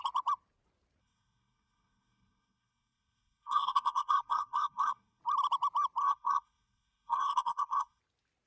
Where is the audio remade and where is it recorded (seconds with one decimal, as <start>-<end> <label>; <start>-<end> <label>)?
0.0-1.0 recorded; 1.0-5.2 remade; 5.2-6.0 recorded; 6.0-8.0 remade; 8.0-8.5 recorded